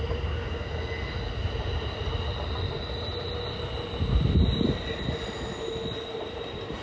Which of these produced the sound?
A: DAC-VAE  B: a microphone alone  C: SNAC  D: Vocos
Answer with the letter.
B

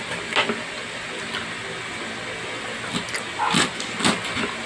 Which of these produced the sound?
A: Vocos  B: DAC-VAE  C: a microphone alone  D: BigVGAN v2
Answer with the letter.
C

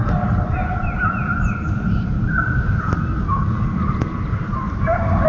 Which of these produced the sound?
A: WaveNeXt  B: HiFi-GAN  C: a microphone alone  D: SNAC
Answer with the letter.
C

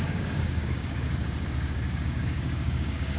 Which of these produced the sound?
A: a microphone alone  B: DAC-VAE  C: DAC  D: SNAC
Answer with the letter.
C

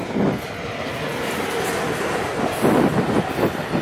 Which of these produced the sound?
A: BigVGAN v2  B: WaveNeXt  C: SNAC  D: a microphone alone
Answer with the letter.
D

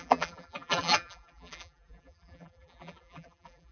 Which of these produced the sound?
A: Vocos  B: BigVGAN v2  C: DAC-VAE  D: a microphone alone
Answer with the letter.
B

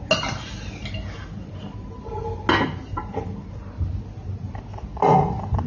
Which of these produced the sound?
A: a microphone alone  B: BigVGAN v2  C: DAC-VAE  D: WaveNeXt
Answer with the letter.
A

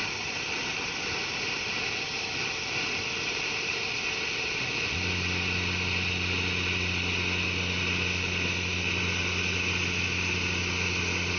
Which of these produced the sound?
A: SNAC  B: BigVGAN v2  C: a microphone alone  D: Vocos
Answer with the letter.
C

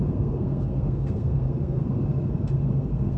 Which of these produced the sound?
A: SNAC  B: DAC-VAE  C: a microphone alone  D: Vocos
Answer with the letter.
A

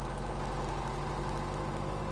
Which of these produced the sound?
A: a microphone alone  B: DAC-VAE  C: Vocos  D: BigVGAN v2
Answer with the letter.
A